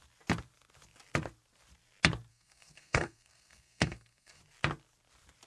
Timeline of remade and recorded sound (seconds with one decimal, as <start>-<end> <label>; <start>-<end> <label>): 0.0-2.3 recorded; 2.3-4.4 remade; 4.4-5.5 recorded